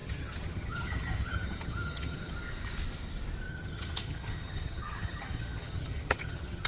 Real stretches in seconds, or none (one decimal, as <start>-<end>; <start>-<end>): 2.3-3.5